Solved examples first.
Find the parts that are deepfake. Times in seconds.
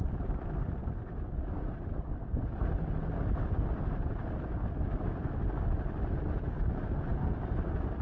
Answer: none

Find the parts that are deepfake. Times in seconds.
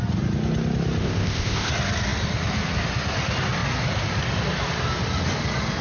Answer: 1.0-1.7 (codec, ZipCodec)